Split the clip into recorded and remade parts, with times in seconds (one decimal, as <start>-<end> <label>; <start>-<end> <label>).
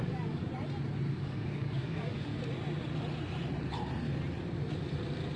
0.0-0.5 remade; 0.5-1.1 recorded; 1.1-2.3 remade; 2.3-5.4 recorded